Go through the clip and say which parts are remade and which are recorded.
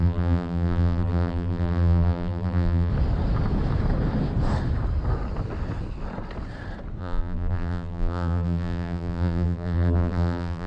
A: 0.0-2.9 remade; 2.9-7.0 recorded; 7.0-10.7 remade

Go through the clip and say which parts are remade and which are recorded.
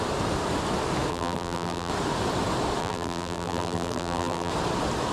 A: 0.0-1.1 recorded; 1.1-1.9 remade; 1.9-2.8 recorded; 2.8-4.5 remade; 4.5-5.1 recorded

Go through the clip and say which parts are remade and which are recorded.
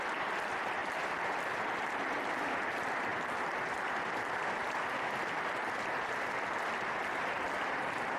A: 0.0-8.2 recorded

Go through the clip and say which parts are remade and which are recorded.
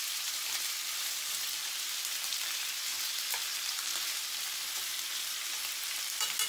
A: 0.0-6.5 remade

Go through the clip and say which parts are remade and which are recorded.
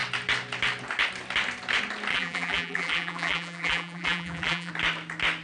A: 0.0-2.1 recorded; 2.1-4.7 remade; 4.7-5.4 recorded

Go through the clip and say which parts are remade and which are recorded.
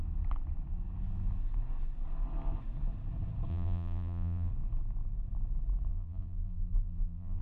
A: 0.0-3.5 recorded; 3.5-4.5 remade; 4.5-5.9 recorded; 5.9-7.4 remade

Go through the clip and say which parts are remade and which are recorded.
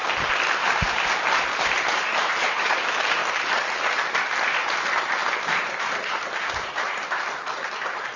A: 0.0-0.6 recorded; 0.6-3.2 remade; 3.2-4.5 recorded; 4.5-5.2 remade; 5.2-5.8 recorded; 5.8-8.2 remade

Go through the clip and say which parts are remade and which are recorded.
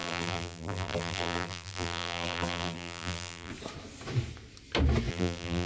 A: 0.0-3.5 remade; 3.5-5.1 recorded; 5.1-5.7 remade